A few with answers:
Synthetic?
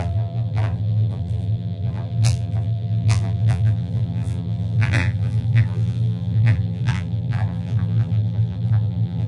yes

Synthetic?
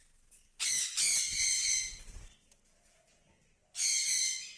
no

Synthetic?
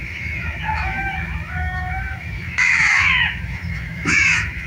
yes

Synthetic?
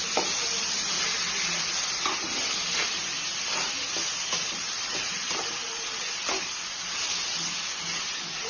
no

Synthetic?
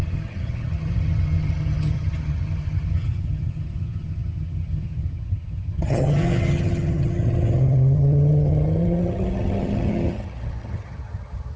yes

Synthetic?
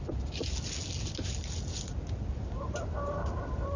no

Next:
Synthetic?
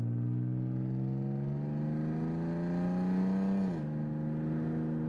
no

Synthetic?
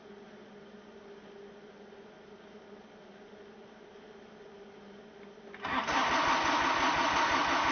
no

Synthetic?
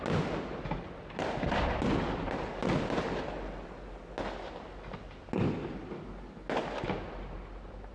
no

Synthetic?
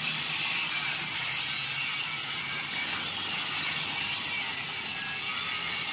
yes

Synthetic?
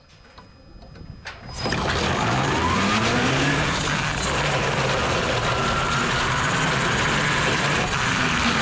no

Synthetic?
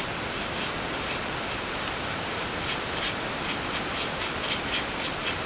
no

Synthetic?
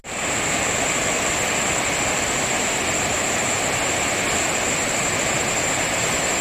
no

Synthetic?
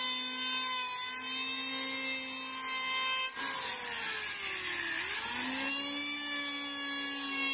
no